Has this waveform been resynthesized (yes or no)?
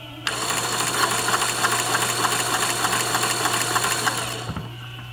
no